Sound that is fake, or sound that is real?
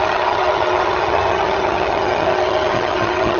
fake